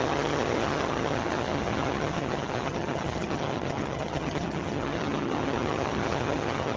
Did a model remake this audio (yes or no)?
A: yes